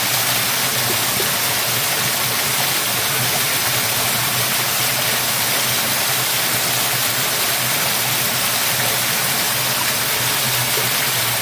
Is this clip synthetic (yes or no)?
no